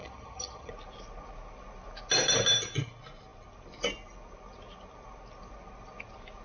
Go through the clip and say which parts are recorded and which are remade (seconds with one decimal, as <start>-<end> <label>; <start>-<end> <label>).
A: 0.0-0.7 remade; 0.7-6.4 recorded